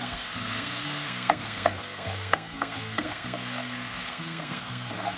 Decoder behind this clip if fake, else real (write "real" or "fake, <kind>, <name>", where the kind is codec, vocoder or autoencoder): fake, codec, SNAC